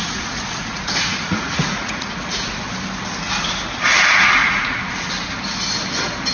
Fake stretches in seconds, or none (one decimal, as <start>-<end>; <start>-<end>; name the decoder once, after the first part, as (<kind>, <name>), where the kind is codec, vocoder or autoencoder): 0.0-2.6 (vocoder, Vocos); 4.4-5.1